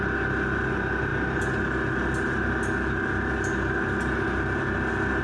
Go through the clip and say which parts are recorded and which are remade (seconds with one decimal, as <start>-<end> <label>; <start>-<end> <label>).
0.0-5.2 recorded